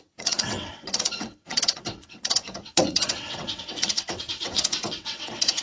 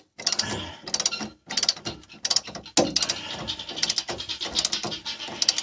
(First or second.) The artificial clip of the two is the first